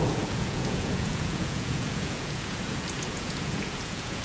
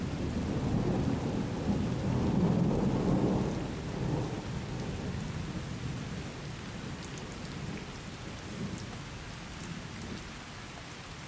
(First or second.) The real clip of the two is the second